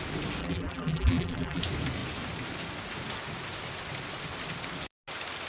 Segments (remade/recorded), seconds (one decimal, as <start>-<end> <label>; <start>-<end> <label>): 0.0-0.4 recorded; 0.4-1.6 remade; 1.6-5.5 recorded